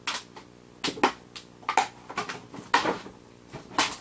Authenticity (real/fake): real